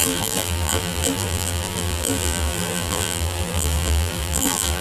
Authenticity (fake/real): fake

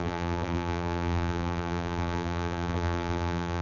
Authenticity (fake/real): fake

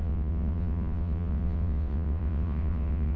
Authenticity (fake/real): fake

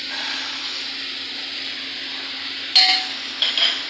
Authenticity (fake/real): real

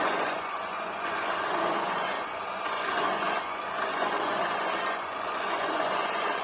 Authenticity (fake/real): fake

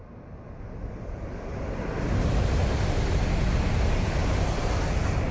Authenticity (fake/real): real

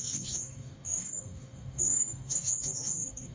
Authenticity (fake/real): fake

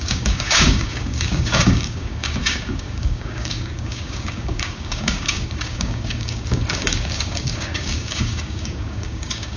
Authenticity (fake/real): fake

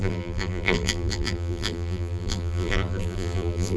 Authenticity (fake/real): fake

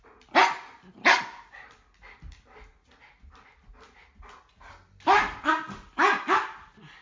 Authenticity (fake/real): real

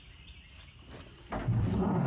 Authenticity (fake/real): real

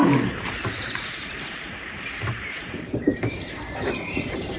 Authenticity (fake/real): fake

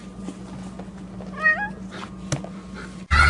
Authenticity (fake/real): real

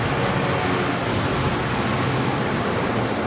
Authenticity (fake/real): real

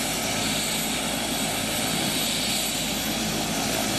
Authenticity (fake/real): real